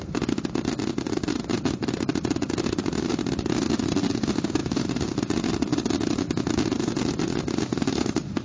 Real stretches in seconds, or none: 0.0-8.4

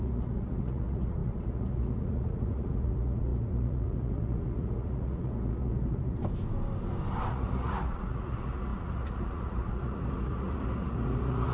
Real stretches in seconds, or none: 6.2-7.3

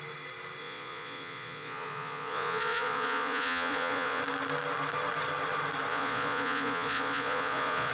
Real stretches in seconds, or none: 0.0-0.6; 4.2-5.9